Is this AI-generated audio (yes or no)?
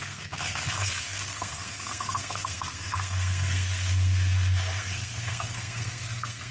yes